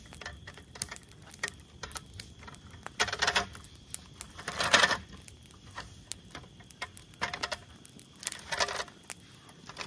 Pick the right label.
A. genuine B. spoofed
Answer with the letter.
A